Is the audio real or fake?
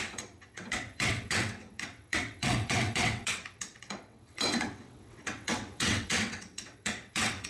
fake